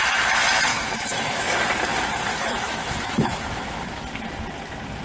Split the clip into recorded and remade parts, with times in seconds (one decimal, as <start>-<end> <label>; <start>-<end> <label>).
0.0-0.7 recorded; 0.7-1.5 remade; 1.5-2.3 recorded; 2.3-4.0 remade; 4.0-5.0 recorded